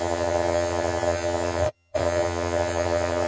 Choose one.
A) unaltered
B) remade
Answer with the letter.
B